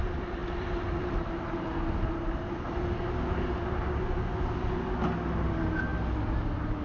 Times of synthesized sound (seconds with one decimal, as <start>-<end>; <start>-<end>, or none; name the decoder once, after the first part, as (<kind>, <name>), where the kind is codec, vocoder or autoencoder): none